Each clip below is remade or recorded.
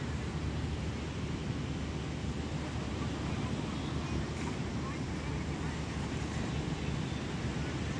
recorded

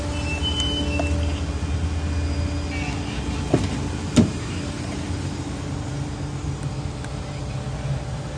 recorded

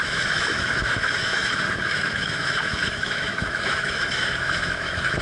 remade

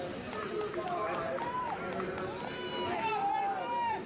recorded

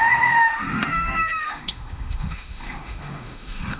remade